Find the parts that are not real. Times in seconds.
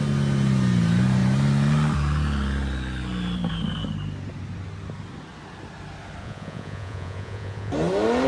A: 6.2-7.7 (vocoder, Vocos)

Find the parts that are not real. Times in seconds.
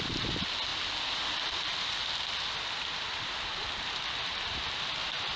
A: none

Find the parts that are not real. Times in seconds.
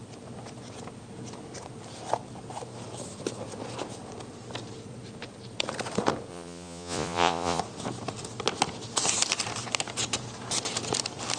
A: 6.3-7.6 (vocoder, Vocos)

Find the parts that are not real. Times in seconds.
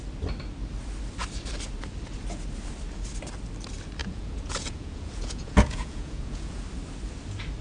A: 4.0-6.6 (vocoder, Vocos)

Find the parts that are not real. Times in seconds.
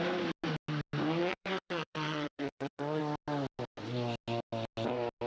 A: 1.2-3.0 (vocoder, Vocos)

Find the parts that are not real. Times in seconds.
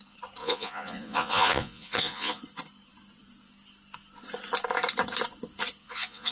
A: 0.4-2.4 (vocoder, Vocos); 5.8-6.3